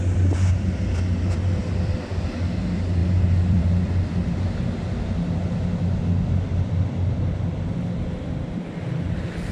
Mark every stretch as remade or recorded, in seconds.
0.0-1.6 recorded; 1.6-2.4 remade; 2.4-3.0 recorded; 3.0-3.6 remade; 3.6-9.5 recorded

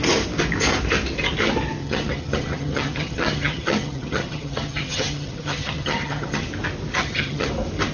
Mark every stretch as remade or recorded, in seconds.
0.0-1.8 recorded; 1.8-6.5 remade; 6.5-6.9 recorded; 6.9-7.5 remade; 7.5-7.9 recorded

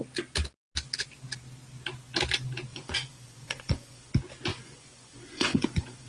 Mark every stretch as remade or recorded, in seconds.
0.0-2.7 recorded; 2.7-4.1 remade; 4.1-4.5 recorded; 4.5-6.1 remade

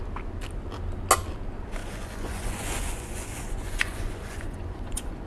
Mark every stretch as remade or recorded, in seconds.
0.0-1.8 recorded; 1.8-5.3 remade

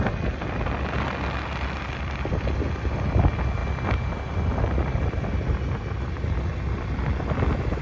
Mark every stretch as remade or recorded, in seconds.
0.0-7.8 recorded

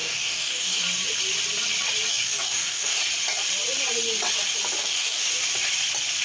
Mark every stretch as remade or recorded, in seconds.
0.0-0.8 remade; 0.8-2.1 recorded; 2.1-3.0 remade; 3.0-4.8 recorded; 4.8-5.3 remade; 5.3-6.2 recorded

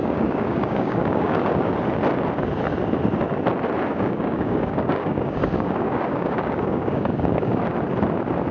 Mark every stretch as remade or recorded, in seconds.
0.0-1.7 remade; 1.7-3.9 recorded; 3.9-7.6 remade; 7.6-8.5 recorded

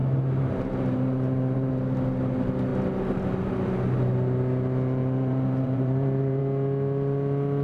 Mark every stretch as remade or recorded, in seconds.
0.0-1.7 remade; 1.7-5.0 recorded; 5.0-6.4 remade; 6.4-7.6 recorded